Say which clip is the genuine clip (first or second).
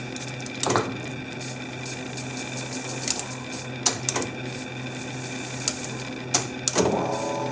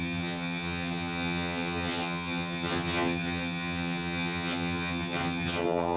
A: first